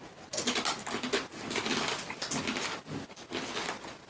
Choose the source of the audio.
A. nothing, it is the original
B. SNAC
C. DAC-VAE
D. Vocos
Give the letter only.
A